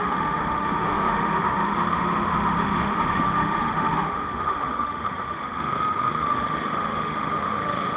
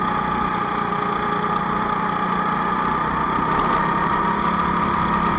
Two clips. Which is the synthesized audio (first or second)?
first